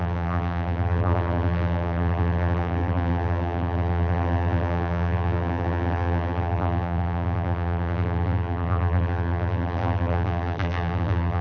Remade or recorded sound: remade